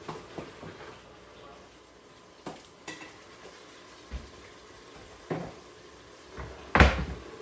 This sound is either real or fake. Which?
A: real